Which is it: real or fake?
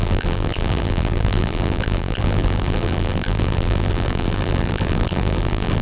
fake